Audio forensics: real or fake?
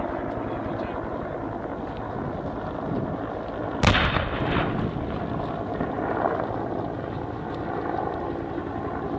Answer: real